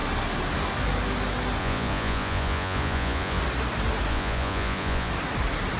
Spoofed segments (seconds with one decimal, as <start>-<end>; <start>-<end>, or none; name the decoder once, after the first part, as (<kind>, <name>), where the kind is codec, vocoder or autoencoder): 1.6-3.4 (vocoder, Vocos); 4.1-5.1

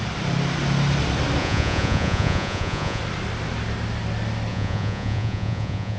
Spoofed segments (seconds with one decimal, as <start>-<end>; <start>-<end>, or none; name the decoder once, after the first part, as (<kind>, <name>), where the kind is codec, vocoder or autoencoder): 1.4-3.0 (vocoder, Vocos); 4.5-6.0

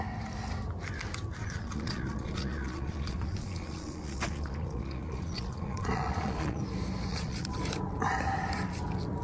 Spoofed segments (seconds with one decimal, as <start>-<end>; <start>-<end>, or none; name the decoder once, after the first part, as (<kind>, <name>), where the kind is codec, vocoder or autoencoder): 1.4-6.6 (vocoder, Vocos); 7.1-7.6